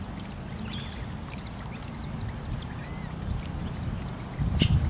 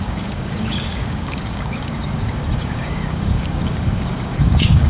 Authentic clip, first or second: first